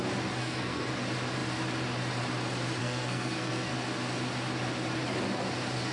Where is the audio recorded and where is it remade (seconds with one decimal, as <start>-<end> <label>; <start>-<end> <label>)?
0.0-0.4 recorded; 0.4-0.9 remade; 0.9-2.8 recorded; 2.8-3.7 remade; 3.7-5.9 recorded